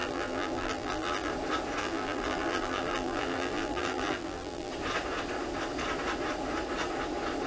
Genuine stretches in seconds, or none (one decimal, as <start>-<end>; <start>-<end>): 1.3-1.8; 4.7-7.5